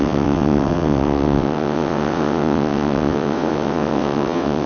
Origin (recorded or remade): remade